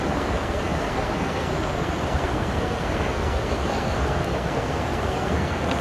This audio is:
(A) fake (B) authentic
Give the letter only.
A